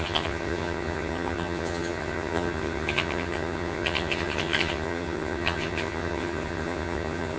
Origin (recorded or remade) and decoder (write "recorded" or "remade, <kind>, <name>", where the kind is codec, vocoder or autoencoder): remade, vocoder, HiFi-GAN